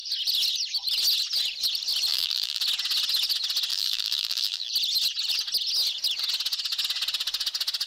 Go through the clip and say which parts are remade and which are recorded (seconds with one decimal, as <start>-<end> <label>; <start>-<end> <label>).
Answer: 0.0-2.1 recorded; 2.1-2.6 remade; 2.6-3.7 recorded; 3.7-4.7 remade; 4.7-7.9 recorded